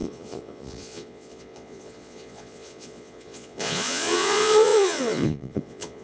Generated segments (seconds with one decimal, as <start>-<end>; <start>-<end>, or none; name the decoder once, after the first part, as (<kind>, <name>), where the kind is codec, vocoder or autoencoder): 0.0-6.0 (vocoder, Vocos)